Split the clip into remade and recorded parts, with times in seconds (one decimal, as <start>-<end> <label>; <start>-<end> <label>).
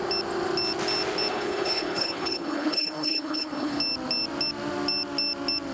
0.0-1.3 recorded; 1.3-3.8 remade; 3.8-5.7 recorded